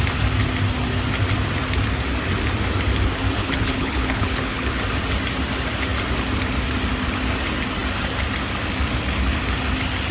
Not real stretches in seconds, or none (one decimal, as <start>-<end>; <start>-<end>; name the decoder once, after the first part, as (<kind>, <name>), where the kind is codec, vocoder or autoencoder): 3.4-4.8 (codec, HILCodec)